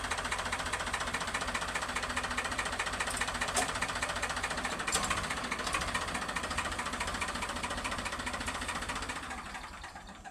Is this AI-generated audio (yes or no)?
yes